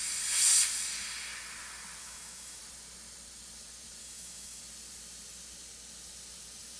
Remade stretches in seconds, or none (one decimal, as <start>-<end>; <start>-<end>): 2.0-2.6; 4.0-4.6